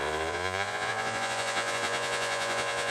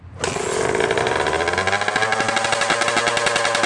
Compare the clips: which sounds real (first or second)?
second